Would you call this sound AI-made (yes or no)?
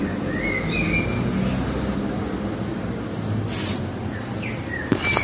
no